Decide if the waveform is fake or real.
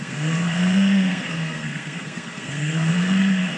fake